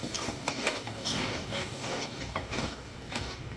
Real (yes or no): no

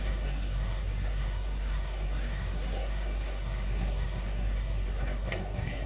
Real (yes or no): no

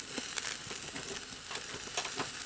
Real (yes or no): yes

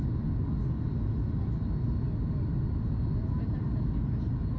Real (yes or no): yes